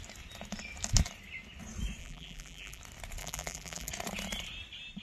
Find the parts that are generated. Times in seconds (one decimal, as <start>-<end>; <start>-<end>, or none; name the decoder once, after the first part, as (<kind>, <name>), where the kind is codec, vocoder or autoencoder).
2.0-2.8 (vocoder, BigVGAN v2); 3.2-3.9